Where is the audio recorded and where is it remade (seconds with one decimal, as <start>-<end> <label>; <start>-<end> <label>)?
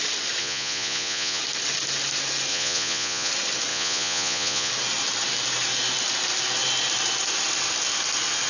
0.0-0.4 recorded; 0.4-1.4 remade; 1.4-2.5 recorded; 2.5-3.3 remade; 3.3-3.7 recorded; 3.7-4.7 remade; 4.7-8.5 recorded